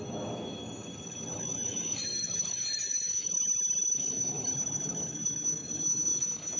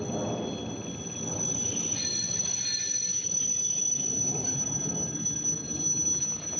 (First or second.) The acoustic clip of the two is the second